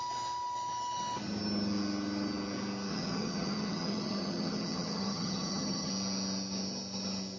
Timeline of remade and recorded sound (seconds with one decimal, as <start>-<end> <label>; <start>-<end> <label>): 0.0-2.9 recorded; 2.9-5.9 remade; 5.9-7.4 recorded

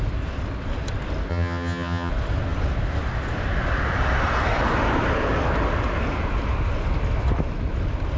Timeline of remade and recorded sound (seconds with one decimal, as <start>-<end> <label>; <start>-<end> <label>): 0.0-1.3 recorded; 1.3-2.1 remade; 2.1-8.2 recorded

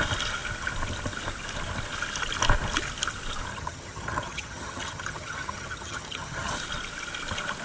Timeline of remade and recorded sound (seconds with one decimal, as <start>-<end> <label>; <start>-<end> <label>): 0.0-3.5 recorded; 3.5-6.5 remade; 6.5-7.6 recorded